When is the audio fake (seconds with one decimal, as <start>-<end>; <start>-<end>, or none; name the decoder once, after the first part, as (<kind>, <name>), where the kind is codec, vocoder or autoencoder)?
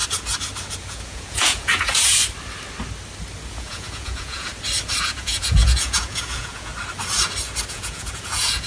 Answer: 0.7-2.2 (vocoder, Vocos); 3.5-4.5; 5.0-6.7; 7.7-8.7